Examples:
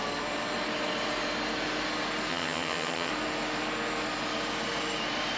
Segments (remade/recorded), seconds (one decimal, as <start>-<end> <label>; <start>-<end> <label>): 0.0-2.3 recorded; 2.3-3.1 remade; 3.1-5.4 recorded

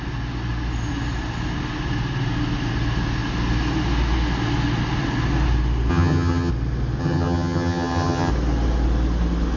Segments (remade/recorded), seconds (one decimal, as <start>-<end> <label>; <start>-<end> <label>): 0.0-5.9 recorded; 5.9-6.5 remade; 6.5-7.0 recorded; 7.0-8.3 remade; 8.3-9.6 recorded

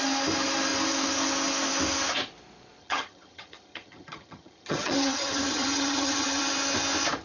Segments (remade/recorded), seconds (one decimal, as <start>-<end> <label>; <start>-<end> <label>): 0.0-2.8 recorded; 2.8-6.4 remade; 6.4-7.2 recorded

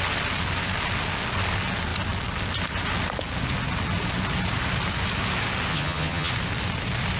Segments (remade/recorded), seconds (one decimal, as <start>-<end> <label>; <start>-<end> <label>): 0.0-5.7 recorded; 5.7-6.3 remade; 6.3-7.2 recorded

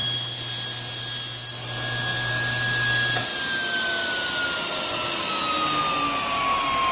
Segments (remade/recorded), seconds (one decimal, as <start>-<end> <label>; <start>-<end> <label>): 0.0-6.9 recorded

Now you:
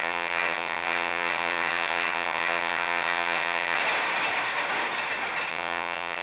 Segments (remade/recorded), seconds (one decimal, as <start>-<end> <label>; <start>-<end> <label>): 0.0-3.8 remade; 3.8-5.5 recorded; 5.5-6.2 remade